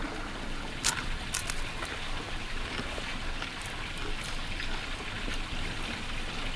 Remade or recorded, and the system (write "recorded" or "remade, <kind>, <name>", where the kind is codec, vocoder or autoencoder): recorded